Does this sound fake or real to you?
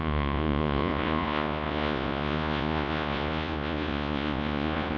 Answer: fake